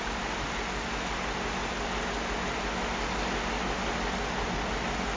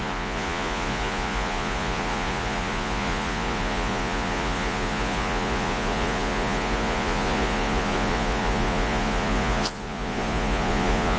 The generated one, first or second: second